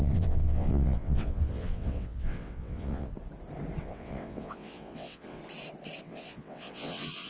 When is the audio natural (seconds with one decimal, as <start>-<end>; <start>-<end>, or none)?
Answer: 3.1-3.8; 5.4-6.0